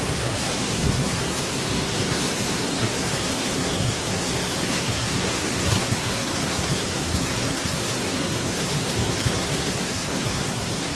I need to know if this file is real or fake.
fake